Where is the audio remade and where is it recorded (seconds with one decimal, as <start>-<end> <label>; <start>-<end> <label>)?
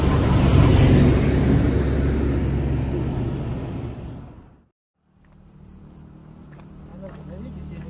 0.0-0.7 remade; 0.7-5.4 recorded; 5.4-6.9 remade; 6.9-7.9 recorded